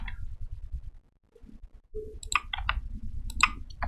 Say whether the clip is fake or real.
real